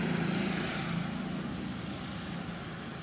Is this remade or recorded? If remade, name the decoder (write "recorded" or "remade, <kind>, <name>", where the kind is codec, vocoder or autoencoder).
recorded